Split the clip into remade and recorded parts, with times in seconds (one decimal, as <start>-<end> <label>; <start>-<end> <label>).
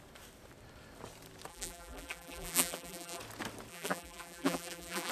0.0-1.5 recorded; 1.5-3.2 remade; 3.2-3.7 recorded; 3.7-5.1 remade